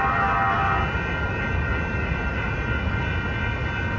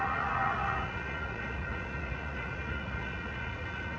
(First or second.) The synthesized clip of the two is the second